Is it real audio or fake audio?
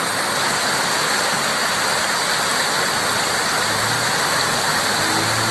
real